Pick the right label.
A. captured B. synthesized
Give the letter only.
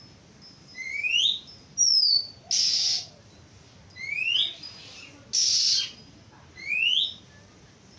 A